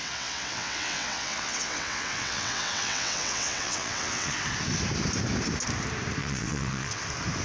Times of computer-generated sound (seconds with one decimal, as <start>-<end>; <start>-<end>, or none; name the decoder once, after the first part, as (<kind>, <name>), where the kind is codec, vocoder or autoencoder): 0.0-4.4 (vocoder, WaveNeXt); 6.2-7.0